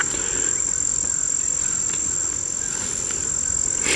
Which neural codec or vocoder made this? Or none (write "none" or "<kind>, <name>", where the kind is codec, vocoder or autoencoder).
none